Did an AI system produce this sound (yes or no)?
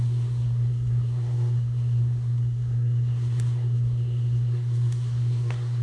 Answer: yes